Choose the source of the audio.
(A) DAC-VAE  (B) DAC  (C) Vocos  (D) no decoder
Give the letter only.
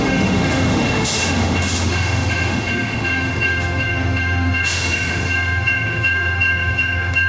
A